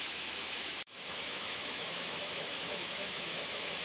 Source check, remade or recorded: remade